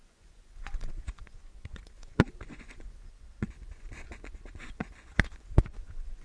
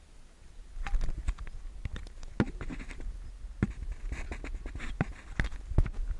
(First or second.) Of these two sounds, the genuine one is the second